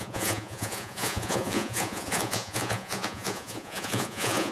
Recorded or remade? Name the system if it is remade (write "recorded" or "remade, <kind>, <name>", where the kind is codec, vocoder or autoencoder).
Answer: remade, vocoder, Vocos